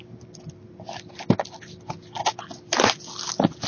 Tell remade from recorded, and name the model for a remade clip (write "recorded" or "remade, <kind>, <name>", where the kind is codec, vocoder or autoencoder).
recorded